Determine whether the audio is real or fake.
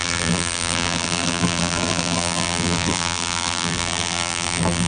fake